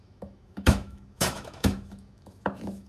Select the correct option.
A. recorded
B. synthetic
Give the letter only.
B